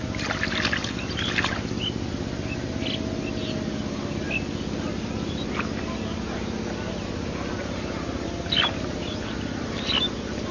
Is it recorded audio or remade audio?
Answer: recorded